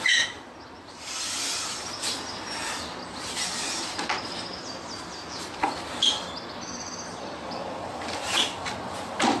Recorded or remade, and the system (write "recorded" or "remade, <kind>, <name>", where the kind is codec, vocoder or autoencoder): recorded